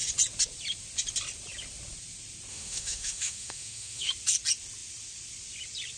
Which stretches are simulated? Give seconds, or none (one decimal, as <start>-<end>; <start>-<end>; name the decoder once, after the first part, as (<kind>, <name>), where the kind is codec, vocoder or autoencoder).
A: 2.5-4.1 (autoencoder, DAC-VAE)